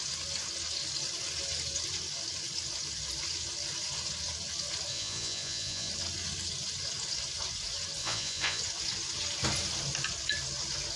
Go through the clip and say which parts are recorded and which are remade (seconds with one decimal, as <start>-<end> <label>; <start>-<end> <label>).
0.0-4.9 recorded; 4.9-5.9 remade; 5.9-8.0 recorded; 8.0-8.6 remade; 8.6-11.0 recorded